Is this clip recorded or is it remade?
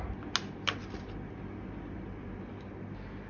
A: recorded